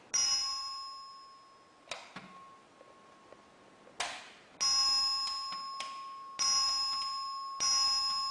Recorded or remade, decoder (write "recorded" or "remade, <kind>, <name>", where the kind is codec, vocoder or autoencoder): recorded